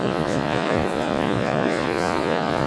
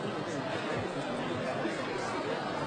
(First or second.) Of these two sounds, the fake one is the first